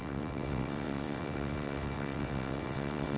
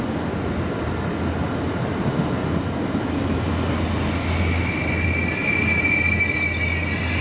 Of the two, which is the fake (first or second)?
first